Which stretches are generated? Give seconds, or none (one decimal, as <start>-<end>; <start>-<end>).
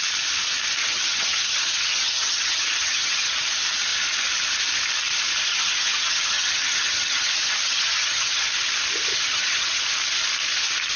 0.8-3.4; 5.5-8.5; 9.1-9.8